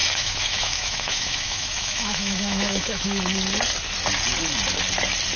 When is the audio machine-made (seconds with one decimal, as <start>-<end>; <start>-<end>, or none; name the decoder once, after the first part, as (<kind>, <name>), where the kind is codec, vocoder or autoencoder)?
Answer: 0.0-3.2 (autoencoder, DAC-VAE)